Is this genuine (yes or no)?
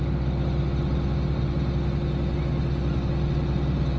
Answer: yes